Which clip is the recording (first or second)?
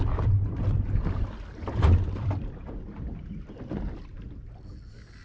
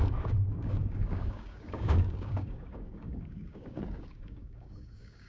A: first